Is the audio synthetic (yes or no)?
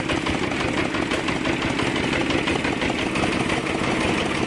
no